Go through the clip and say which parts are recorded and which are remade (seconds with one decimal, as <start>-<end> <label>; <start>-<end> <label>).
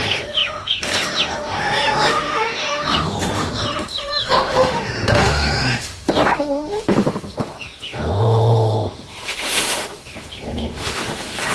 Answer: 0.0-11.5 remade